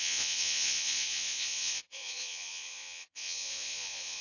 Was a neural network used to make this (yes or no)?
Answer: yes